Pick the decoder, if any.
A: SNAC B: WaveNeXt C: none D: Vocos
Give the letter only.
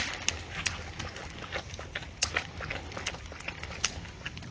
C